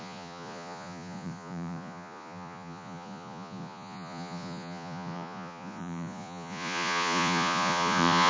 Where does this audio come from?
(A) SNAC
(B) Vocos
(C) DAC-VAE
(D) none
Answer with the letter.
B